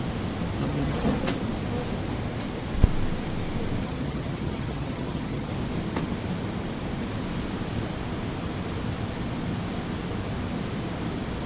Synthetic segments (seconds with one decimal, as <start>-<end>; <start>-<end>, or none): 0.6-1.2; 3.8-5.5